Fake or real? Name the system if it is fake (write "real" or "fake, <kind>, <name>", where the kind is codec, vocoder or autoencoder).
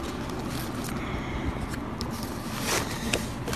real